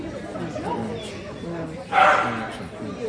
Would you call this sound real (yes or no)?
yes